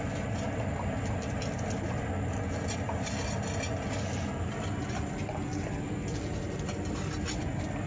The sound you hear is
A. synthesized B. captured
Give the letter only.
B